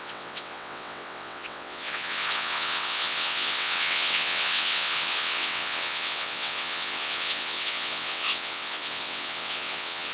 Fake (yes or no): yes